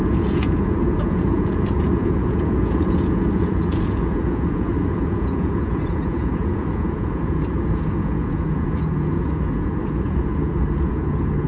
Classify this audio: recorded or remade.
remade